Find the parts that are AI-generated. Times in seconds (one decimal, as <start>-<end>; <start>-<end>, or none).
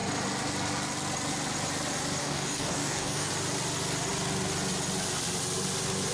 2.2-3.3